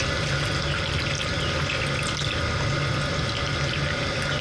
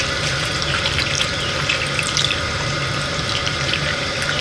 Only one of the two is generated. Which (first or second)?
second